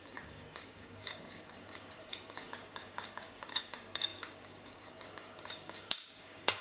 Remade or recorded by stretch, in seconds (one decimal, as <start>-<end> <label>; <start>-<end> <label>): 0.0-6.6 remade